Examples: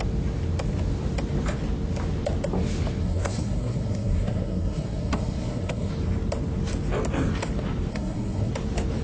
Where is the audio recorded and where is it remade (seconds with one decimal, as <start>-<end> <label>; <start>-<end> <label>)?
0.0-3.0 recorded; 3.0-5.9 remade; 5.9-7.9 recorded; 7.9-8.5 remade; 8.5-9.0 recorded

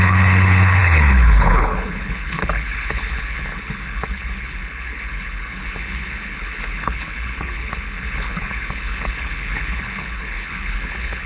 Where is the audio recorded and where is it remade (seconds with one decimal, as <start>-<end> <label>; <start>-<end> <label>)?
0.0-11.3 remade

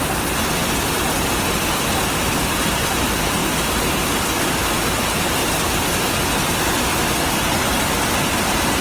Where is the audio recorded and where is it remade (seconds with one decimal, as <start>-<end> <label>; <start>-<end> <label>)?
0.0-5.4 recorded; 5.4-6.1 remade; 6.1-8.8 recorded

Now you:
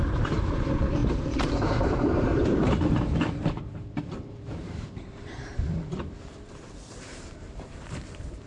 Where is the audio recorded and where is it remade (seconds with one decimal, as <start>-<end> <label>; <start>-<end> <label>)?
0.0-8.5 remade

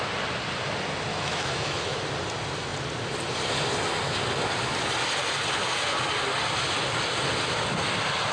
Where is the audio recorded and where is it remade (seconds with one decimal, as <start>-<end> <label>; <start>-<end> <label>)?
0.0-1.1 recorded; 1.1-2.0 remade; 2.0-8.3 recorded

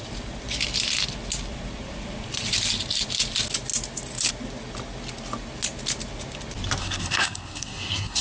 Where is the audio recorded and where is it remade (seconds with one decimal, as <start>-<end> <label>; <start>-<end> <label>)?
0.0-6.8 recorded; 6.8-8.2 remade

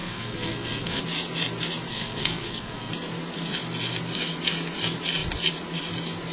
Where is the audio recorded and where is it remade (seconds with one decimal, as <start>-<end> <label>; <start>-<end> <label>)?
0.0-1.0 remade; 1.0-1.9 recorded; 1.9-2.9 remade; 2.9-6.3 recorded